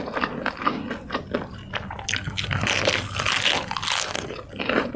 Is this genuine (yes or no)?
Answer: yes